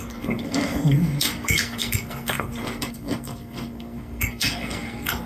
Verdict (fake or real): fake